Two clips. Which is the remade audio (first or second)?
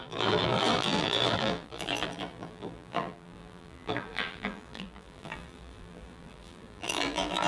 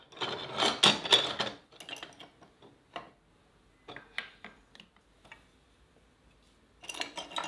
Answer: first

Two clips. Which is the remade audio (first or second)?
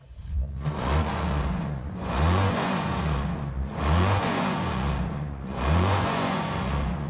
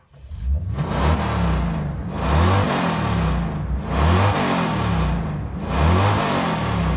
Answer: first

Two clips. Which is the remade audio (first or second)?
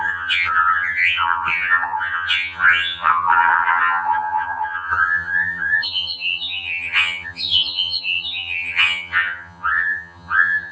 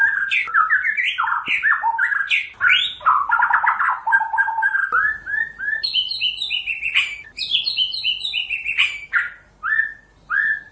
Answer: first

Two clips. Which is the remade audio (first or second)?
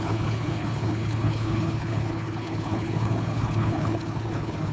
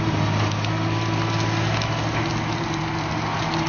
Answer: first